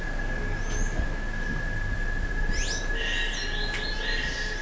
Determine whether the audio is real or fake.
real